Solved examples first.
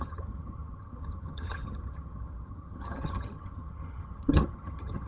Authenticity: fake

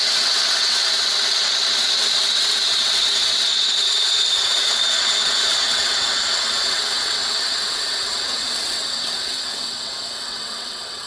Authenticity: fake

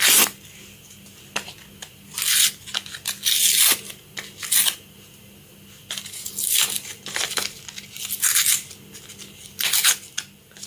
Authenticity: real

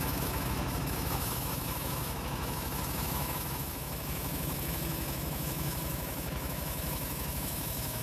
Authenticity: fake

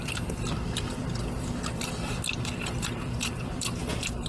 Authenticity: fake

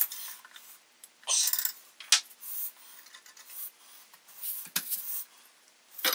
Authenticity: real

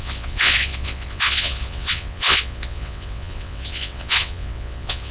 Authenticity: fake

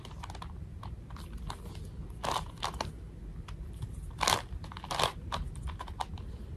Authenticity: real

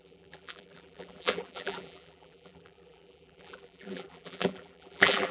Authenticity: fake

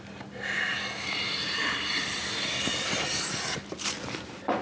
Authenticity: real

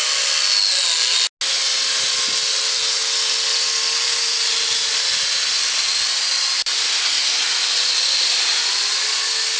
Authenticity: real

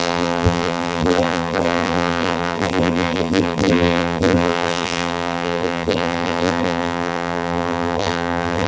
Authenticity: fake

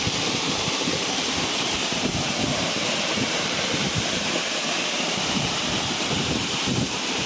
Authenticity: fake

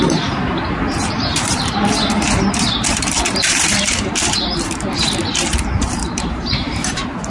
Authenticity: fake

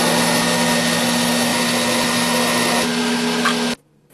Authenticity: real